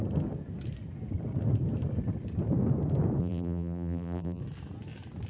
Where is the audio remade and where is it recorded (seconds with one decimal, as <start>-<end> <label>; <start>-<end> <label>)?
0.0-3.2 recorded; 3.2-4.4 remade; 4.4-5.3 recorded